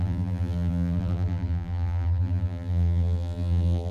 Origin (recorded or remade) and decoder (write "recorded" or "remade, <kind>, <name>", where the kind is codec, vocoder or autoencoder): remade, vocoder, BigVGAN v2